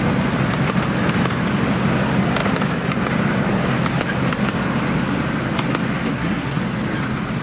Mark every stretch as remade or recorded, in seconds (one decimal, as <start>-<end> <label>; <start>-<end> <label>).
0.0-6.1 recorded; 6.1-6.6 remade; 6.6-7.4 recorded